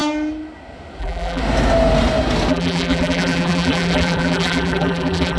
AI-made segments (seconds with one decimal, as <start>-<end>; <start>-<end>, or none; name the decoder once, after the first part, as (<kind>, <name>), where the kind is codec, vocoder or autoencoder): 1.0-1.4 (vocoder, BigVGAN v2); 2.5-5.4